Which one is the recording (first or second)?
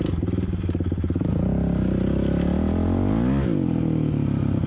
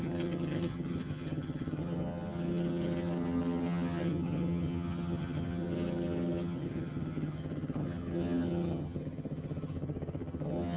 first